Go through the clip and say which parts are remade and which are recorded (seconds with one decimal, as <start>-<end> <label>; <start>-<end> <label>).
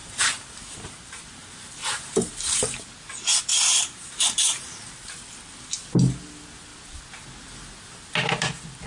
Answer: 0.0-2.8 remade; 2.8-3.5 recorded; 3.5-4.9 remade; 4.9-8.9 recorded